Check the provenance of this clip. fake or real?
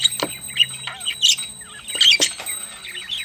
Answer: real